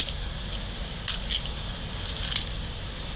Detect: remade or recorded recorded